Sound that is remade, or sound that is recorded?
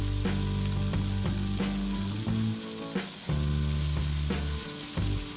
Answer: recorded